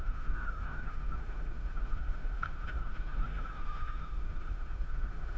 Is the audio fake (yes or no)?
yes